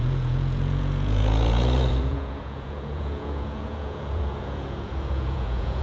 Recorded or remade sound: remade